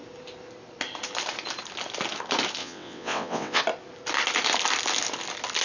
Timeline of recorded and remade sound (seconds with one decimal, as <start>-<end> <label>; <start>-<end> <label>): 0.0-2.6 recorded; 2.6-3.6 remade; 3.6-5.6 recorded